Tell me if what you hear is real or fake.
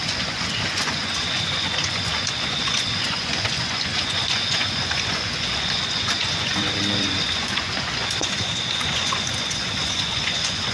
fake